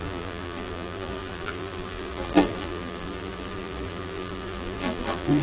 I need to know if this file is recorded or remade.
remade